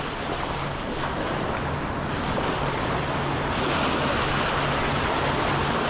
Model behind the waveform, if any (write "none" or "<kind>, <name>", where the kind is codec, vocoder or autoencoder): none